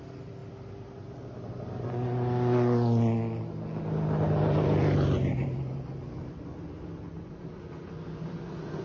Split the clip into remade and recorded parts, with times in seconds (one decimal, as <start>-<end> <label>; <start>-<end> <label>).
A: 0.0-8.8 recorded